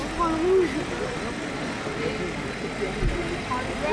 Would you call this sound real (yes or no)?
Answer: yes